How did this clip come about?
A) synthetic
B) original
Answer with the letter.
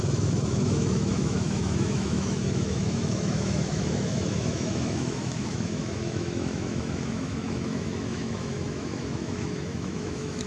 A